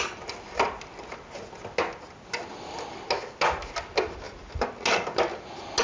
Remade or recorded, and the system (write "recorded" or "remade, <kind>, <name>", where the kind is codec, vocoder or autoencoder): recorded